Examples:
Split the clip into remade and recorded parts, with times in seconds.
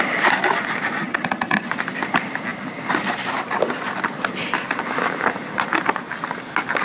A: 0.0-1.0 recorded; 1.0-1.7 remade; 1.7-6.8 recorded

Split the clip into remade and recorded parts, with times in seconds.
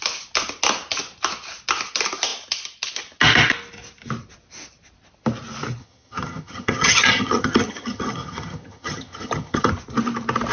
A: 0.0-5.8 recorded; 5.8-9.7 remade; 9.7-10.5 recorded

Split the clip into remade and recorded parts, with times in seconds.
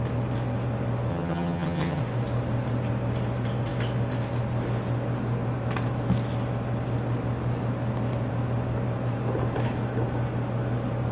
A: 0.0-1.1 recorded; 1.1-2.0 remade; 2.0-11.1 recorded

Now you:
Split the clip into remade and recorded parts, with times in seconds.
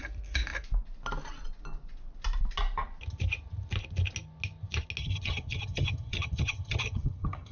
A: 0.0-5.0 recorded; 5.0-7.5 remade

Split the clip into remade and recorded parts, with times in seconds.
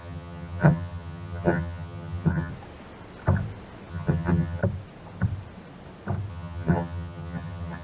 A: 0.0-2.5 remade; 2.5-3.9 recorded; 3.9-4.6 remade; 4.6-6.3 recorded; 6.3-7.8 remade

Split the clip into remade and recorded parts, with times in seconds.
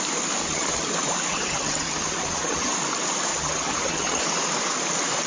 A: 0.0-0.4 recorded; 0.4-0.9 remade; 0.9-1.3 recorded; 1.3-2.7 remade; 2.7-3.3 recorded; 3.3-4.2 remade; 4.2-5.3 recorded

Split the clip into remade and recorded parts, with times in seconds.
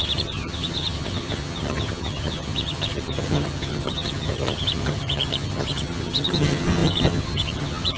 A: 0.0-8.0 remade